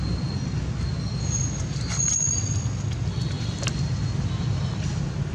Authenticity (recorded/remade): recorded